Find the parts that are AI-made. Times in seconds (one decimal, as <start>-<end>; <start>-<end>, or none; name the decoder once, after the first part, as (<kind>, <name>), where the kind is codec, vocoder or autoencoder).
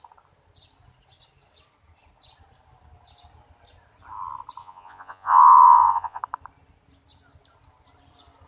4.6-6.2 (vocoder, Vocos)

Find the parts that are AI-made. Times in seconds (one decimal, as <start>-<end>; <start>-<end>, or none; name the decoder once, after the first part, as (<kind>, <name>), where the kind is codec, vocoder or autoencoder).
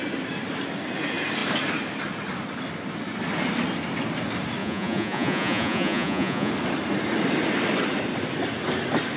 4.6-6.5 (vocoder, Vocos)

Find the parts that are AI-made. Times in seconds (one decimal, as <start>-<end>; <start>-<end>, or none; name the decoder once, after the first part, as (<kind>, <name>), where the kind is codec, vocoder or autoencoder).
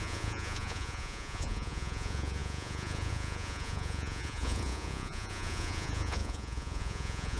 0.0-7.4 (vocoder, Vocos)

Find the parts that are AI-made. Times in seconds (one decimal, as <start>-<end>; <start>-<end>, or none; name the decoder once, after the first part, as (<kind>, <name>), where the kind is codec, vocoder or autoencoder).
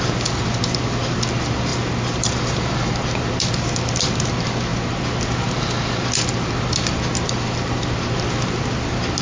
none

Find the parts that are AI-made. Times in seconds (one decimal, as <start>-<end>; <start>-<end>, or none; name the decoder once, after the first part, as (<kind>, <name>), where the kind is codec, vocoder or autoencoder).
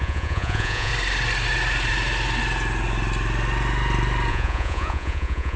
0.0-0.9 (vocoder, Vocos); 4.3-5.6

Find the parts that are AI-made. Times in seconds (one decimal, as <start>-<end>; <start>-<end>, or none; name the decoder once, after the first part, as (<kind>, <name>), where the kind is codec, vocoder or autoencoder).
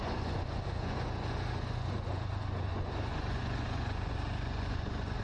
0.0-5.2 (vocoder, Vocos)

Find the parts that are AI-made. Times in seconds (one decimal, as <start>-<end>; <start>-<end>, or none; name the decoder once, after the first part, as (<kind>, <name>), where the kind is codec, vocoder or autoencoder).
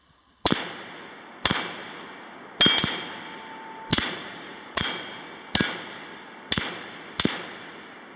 3.9-4.8 (vocoder, Vocos)